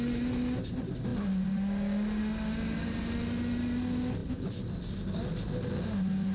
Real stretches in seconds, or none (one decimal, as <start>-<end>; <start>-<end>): 0.0-6.3